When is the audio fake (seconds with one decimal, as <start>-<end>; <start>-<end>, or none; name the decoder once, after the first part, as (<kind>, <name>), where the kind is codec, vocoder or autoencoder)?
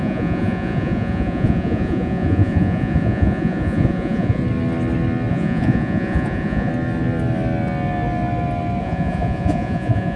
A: 0.0-4.4 (vocoder, Vocos); 5.3-6.7; 8.8-10.2